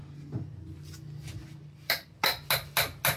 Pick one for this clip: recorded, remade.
recorded